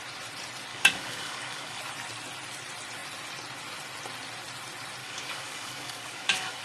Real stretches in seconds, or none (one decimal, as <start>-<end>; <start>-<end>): 0.0-0.7; 1.8-5.0